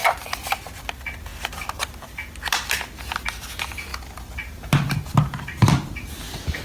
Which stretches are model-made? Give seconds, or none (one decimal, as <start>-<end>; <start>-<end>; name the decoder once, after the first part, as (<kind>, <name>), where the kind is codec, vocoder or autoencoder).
0.0-0.7 (vocoder, BigVGAN v2)